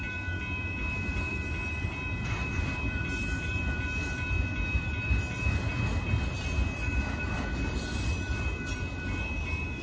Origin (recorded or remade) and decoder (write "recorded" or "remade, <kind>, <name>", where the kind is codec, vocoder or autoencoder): remade, vocoder, BigVGAN v2